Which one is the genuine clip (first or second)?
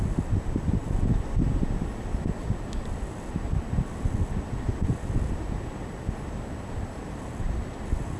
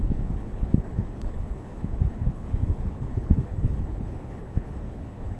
first